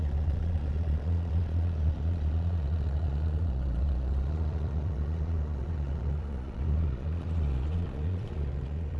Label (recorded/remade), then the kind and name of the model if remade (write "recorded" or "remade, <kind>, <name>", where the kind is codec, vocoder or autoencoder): remade, vocoder, Vocos